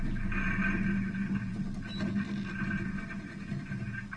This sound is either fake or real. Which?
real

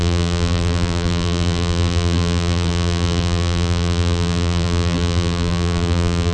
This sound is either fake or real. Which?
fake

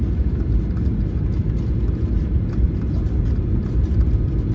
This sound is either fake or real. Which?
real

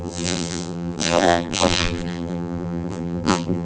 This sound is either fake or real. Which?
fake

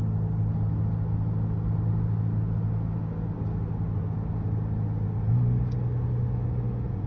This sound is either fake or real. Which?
real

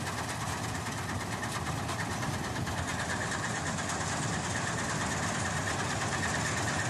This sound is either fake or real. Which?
real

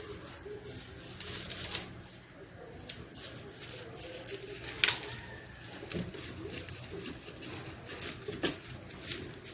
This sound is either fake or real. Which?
real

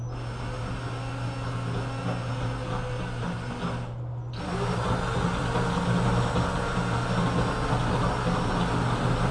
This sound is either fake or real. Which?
real